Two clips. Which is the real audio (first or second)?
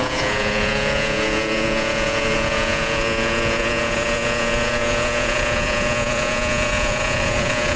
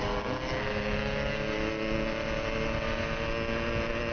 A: second